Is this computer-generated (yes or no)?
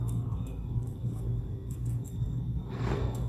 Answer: yes